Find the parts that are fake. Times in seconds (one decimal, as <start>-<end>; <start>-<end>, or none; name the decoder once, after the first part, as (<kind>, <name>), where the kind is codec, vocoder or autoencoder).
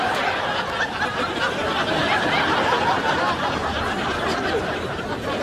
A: none